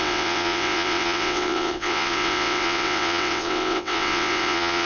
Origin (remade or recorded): remade